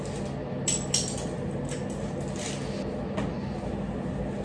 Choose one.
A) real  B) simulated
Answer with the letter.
A